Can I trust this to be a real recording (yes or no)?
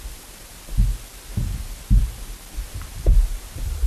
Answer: no